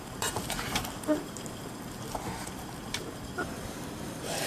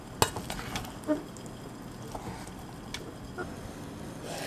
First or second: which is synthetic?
first